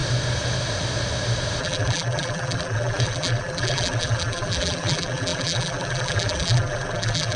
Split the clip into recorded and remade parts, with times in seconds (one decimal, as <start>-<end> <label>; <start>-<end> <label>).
0.0-1.6 recorded; 1.6-7.4 remade